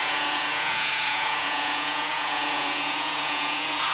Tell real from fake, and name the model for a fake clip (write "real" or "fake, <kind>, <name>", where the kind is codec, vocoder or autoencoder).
fake, vocoder, Vocos